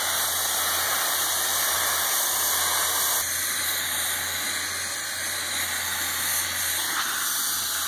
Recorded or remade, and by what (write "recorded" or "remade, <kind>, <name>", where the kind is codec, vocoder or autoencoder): recorded